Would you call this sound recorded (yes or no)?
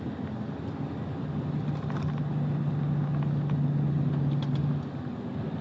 yes